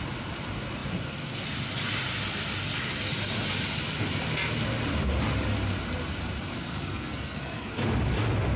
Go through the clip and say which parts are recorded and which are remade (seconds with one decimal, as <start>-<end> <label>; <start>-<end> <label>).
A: 0.0-6.5 recorded; 6.5-7.7 remade; 7.7-8.6 recorded

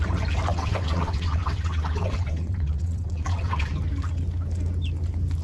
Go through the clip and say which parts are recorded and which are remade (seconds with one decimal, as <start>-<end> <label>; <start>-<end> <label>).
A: 0.0-0.5 recorded; 0.5-3.7 remade; 3.7-5.4 recorded

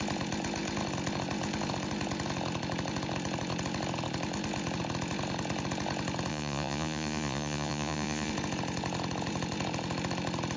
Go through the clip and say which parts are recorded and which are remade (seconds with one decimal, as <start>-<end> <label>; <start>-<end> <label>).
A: 0.0-6.3 recorded; 6.3-8.3 remade; 8.3-10.6 recorded